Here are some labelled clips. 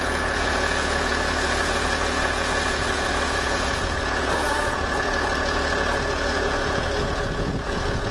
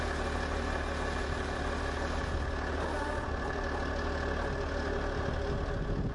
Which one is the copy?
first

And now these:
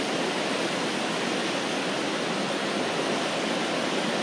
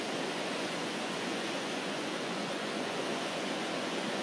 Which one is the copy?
second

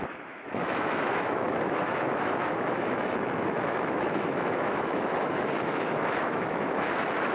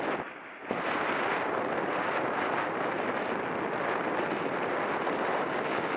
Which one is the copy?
first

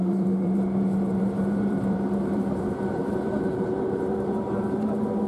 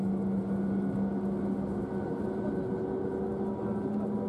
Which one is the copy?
first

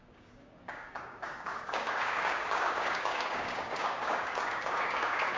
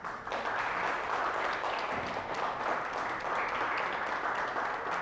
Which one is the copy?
first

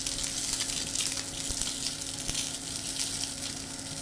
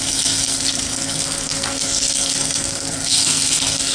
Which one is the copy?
second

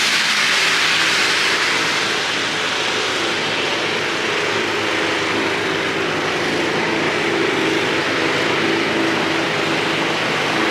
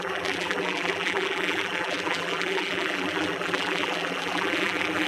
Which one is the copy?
second